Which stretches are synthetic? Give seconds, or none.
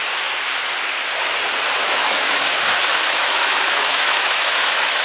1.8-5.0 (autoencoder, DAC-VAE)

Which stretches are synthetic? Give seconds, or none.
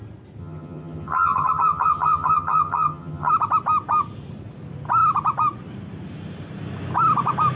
0.4-3.3 (vocoder, HiFi-GAN)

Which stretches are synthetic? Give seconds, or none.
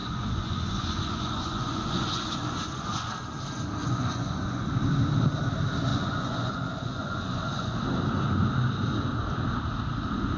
0.0-3.1 (vocoder, Vocos); 3.8-4.7; 5.9-7.8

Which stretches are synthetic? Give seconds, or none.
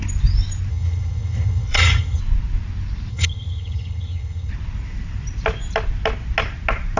0.7-2.2 (vocoder, HiFi-GAN); 3.1-4.5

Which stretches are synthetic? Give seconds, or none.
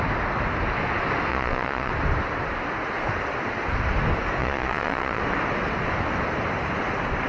1.3-1.9 (vocoder, Vocos); 4.4-5.2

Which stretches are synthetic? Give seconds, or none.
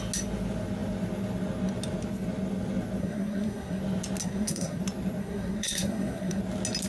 3.0-3.8 (codec, SNAC); 4.2-4.8; 5.2-6.4